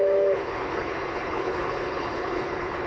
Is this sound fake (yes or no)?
yes